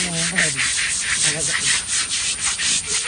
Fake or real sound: real